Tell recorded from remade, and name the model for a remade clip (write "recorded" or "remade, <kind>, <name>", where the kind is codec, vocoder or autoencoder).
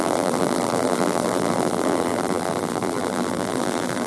remade, vocoder, BigVGAN v2